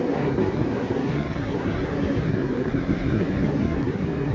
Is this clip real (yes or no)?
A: no